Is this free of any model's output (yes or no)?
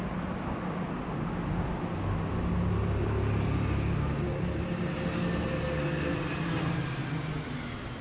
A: yes